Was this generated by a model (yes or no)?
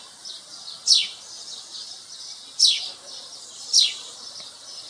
no